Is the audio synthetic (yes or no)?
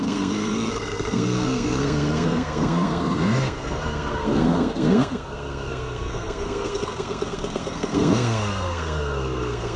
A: yes